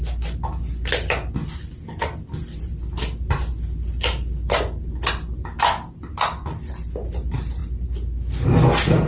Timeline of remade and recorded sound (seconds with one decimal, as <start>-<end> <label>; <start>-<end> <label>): 0.0-9.1 recorded